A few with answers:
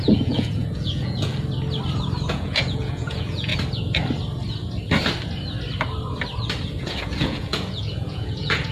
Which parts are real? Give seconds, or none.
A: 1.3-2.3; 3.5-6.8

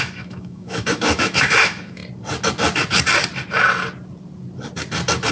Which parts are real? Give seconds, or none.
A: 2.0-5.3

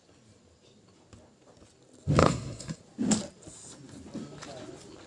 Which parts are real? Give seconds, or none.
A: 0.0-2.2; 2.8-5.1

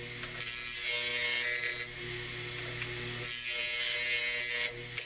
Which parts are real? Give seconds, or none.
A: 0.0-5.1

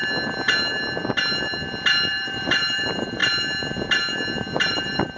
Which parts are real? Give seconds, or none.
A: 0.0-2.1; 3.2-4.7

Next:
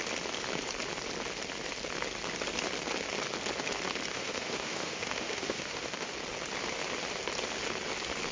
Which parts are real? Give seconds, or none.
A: 0.0-4.1; 6.1-8.3

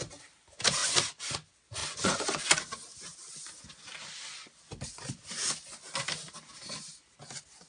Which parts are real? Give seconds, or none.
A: 0.0-1.8; 2.4-7.7